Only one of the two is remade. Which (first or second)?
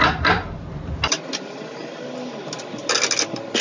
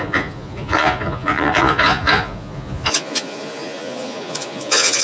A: second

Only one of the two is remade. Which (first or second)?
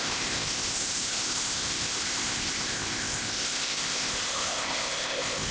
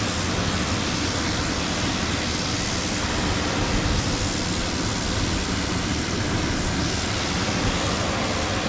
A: first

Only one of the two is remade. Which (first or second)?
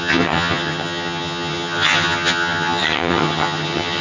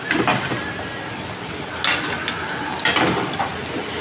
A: first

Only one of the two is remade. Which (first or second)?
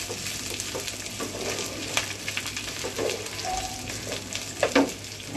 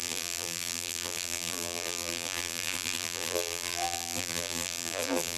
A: second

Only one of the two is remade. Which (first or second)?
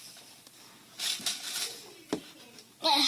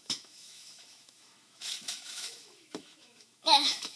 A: second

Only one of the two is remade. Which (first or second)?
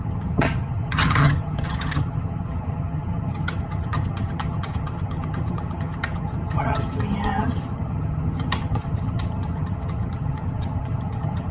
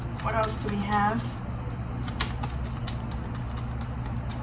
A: first